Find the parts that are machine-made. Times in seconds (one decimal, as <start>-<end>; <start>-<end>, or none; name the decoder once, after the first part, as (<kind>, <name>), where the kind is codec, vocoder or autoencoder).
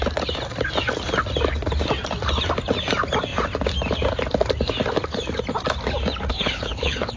6.3-7.2 (codec, HILCodec)